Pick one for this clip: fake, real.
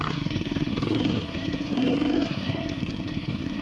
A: fake